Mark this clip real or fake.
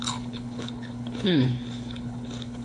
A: fake